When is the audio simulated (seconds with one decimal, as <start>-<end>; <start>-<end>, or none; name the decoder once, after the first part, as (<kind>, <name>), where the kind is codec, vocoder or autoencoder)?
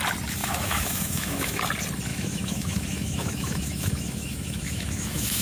0.4-1.6 (autoencoder, DAC-VAE); 2.1-5.4